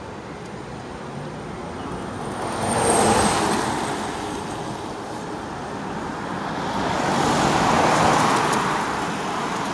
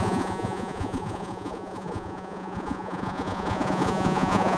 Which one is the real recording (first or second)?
first